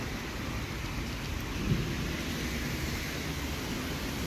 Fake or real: real